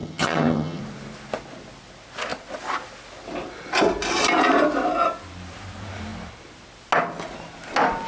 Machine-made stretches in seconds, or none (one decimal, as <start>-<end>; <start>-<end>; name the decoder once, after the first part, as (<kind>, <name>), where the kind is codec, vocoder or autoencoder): 0.0-0.8 (vocoder, HiFi-GAN)